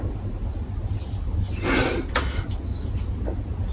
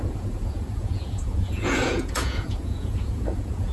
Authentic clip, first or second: first